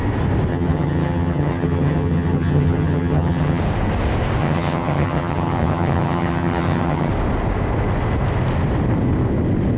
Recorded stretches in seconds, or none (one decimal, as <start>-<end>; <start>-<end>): 0.0-0.5; 3.6-4.4; 7.1-9.8